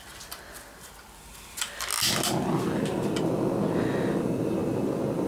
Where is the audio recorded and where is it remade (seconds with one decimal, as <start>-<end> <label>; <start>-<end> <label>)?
0.0-5.3 recorded